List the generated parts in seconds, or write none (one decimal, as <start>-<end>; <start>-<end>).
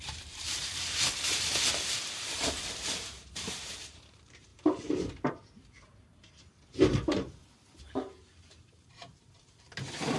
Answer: 0.0-10.2